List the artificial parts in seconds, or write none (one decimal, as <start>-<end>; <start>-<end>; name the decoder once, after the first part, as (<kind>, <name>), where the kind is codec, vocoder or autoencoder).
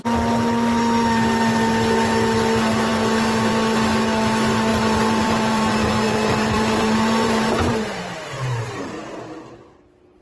4.7-8.0 (vocoder, BigVGAN v2)